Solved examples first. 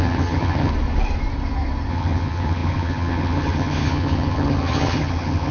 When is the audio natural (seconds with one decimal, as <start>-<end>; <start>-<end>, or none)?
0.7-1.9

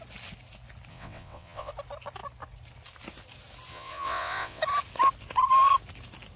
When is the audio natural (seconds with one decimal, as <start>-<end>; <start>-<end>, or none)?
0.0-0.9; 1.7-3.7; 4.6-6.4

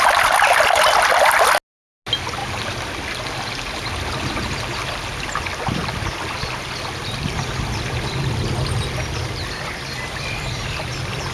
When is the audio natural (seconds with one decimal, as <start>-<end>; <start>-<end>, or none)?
0.0-11.3

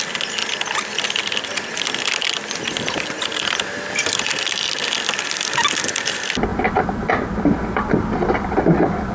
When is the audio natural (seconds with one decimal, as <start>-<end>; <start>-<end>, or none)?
0.0-9.1

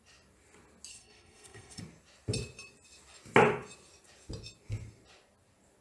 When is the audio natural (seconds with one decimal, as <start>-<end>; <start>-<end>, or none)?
0.0-0.9; 1.8-5.8